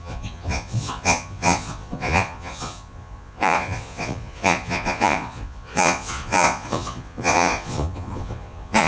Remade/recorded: remade